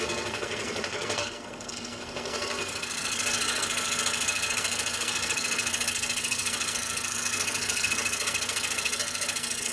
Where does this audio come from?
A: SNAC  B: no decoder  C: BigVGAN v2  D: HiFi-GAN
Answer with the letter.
A